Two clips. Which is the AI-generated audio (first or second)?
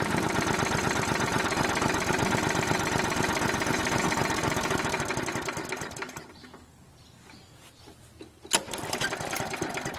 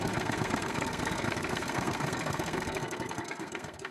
second